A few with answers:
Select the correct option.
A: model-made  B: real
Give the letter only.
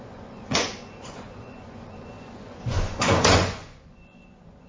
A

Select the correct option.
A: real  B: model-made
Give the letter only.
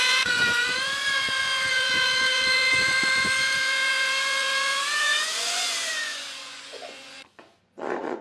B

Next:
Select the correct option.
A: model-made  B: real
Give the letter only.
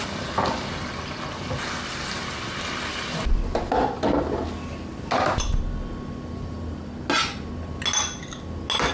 B